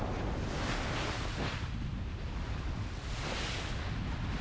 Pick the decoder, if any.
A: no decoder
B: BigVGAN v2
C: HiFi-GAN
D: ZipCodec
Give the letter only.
A